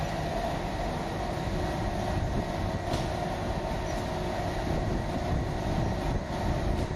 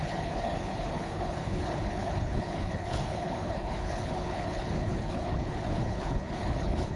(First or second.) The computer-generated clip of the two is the second